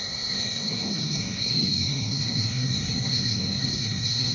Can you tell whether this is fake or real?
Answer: fake